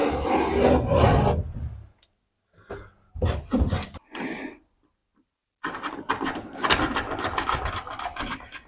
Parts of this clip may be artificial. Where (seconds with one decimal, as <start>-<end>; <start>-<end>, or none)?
none